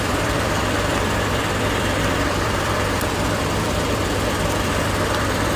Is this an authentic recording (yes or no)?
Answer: no